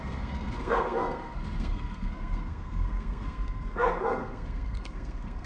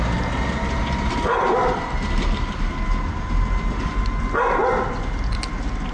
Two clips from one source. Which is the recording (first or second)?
second